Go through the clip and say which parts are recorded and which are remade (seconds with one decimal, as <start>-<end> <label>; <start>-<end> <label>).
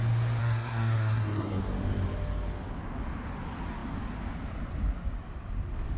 0.0-0.4 recorded; 0.4-1.6 remade; 1.6-6.0 recorded